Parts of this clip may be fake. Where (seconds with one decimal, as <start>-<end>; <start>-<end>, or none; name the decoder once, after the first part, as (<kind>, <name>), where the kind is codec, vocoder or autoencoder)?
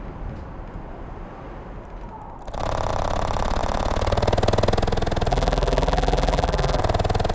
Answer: 5.3-6.8 (vocoder, BigVGAN v2)